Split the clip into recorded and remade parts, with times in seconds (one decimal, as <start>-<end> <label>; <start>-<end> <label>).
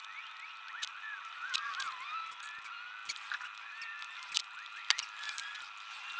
0.0-6.2 recorded